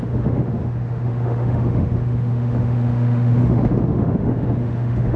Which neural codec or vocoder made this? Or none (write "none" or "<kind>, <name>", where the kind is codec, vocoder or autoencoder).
autoencoder, DAC-VAE